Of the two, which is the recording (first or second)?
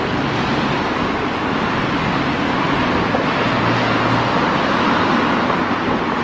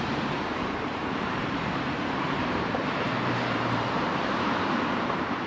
first